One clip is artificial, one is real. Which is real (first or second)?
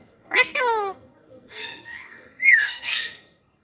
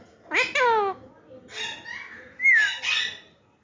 second